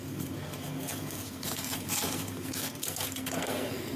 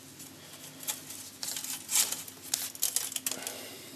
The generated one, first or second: first